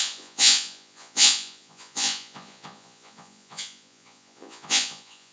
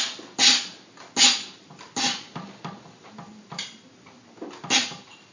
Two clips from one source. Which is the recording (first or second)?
second